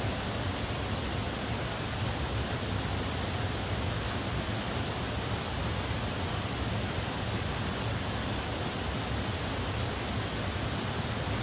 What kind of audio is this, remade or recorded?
recorded